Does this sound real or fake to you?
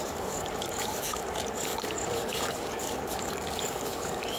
fake